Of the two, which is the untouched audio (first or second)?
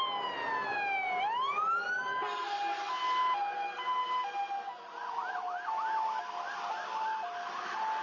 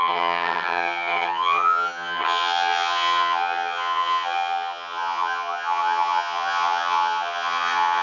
first